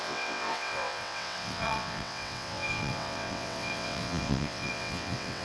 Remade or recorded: remade